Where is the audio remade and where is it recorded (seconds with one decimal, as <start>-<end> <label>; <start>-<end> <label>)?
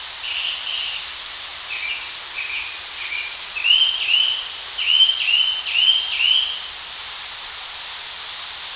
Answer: 0.0-1.5 remade; 1.5-3.1 recorded; 3.1-4.6 remade; 4.6-6.8 recorded; 6.8-8.8 remade